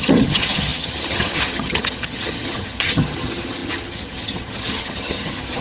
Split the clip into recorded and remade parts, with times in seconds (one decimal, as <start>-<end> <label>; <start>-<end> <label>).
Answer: 0.0-5.6 remade